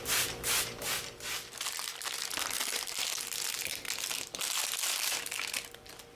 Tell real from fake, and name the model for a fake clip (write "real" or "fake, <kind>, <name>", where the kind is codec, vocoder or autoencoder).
real